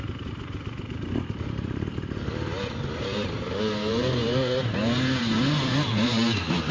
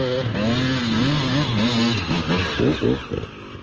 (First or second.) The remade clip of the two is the first